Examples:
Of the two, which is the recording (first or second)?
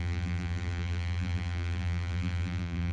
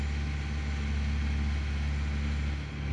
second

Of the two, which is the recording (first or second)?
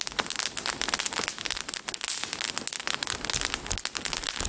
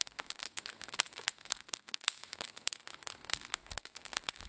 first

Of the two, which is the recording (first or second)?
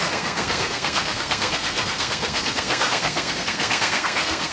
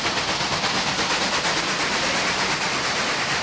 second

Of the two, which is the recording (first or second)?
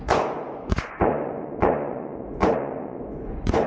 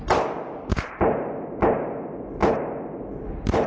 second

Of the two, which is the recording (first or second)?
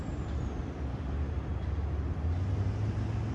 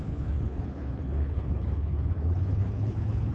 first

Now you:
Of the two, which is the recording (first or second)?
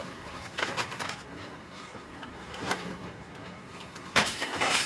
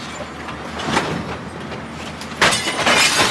second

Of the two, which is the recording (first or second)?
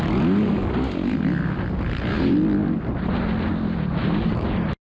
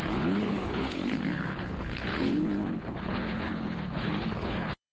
first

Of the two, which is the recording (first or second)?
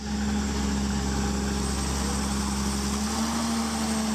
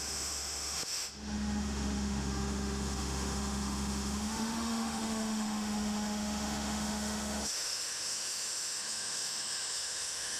first